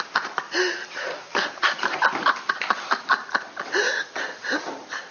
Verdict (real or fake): real